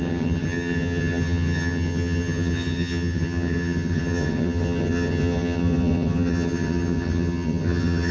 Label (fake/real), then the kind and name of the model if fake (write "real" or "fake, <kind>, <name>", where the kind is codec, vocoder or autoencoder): fake, vocoder, HiFi-GAN